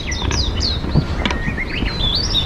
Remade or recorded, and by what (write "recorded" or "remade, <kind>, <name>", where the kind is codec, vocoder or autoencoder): recorded